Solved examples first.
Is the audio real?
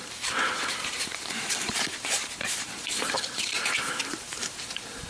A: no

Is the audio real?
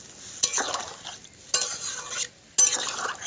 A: yes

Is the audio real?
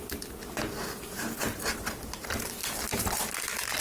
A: yes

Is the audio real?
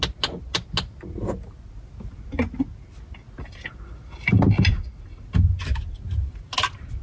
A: yes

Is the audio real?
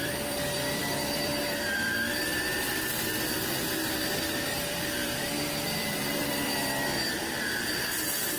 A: no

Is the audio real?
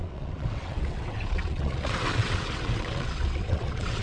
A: no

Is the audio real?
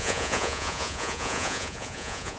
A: no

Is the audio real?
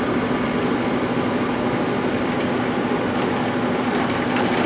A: yes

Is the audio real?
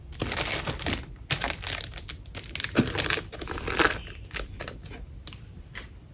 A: yes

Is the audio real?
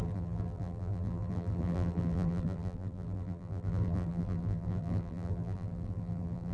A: no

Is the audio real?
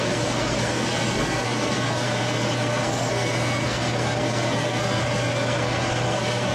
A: no